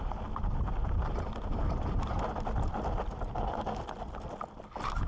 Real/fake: real